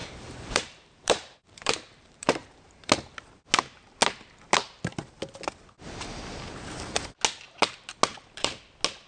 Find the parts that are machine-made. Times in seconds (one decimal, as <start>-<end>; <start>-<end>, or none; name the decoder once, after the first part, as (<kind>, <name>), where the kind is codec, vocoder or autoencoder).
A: 0.0-2.9 (vocoder, BigVGAN v2); 8.1-8.6